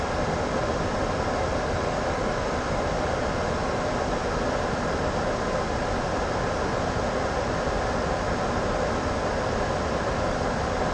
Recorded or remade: recorded